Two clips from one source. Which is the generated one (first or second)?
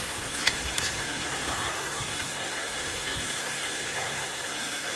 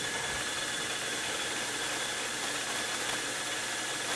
first